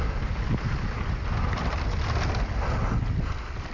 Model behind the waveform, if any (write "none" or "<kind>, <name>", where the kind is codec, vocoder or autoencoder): none